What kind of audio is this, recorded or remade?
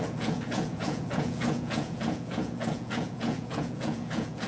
remade